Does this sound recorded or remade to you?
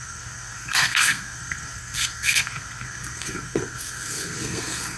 remade